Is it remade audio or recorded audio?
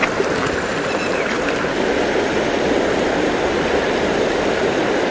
recorded